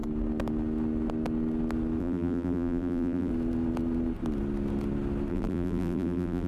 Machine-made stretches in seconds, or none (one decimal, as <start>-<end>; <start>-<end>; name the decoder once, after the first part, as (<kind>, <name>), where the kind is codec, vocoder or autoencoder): 2.0-3.3 (vocoder, BigVGAN v2); 5.3-6.5